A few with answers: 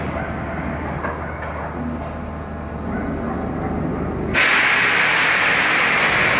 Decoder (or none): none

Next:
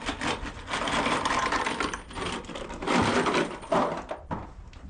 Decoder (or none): vocoder, BigVGAN v2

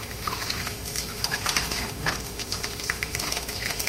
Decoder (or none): autoencoder, DAC-VAE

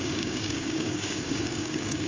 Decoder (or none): codec, DAC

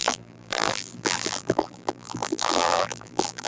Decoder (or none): vocoder, BigVGAN v2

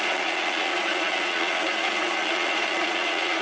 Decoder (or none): vocoder, Vocos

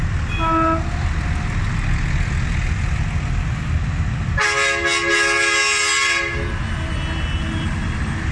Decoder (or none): none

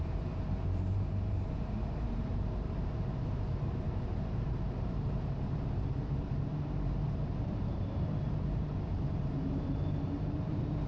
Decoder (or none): vocoder, BigVGAN v2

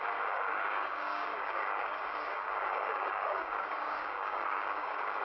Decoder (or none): codec, DAC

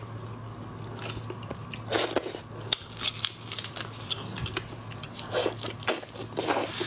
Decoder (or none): none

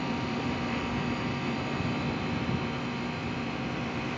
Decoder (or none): vocoder, BigVGAN v2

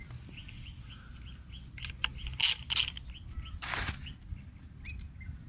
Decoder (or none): none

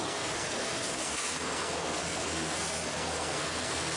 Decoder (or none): codec, SNAC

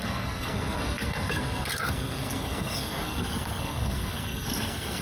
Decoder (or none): codec, SNAC